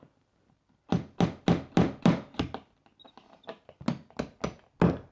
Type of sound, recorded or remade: recorded